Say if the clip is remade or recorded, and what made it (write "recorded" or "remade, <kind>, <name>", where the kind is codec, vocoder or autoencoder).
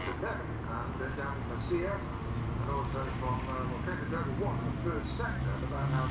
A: recorded